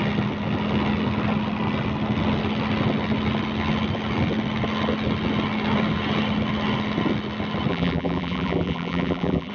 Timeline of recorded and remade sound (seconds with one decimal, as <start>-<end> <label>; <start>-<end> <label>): 0.0-7.7 recorded; 7.7-9.5 remade